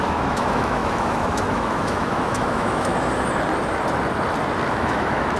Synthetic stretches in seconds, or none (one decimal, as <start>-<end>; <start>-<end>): 0.0-2.9; 4.7-5.4